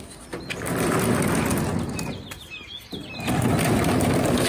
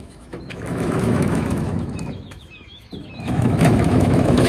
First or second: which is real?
first